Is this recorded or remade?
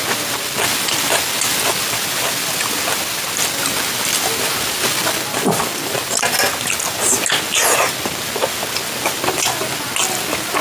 recorded